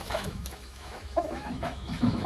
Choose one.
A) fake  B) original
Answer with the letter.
A